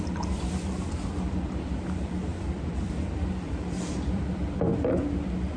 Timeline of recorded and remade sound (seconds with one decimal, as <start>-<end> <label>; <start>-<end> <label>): 0.0-4.7 remade; 4.7-5.6 recorded